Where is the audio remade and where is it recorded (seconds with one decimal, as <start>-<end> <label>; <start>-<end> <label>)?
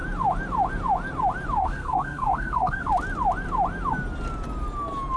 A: 0.0-1.6 recorded; 1.6-2.9 remade; 2.9-5.2 recorded